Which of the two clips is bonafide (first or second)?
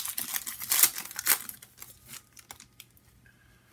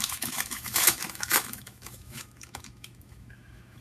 first